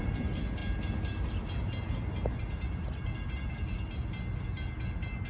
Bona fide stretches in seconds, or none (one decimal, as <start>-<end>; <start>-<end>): 0.0-5.3